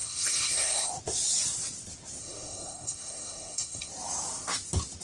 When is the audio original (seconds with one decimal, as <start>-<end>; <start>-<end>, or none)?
0.9-2.2; 3.9-5.0